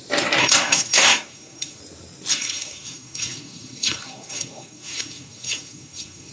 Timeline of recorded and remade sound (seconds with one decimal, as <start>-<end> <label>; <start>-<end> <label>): 0.0-0.4 recorded; 0.4-1.8 remade; 1.8-2.3 recorded; 2.3-6.3 remade